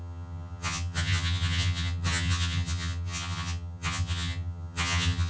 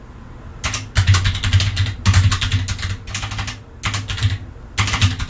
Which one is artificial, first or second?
first